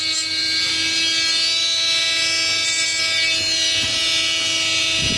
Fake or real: real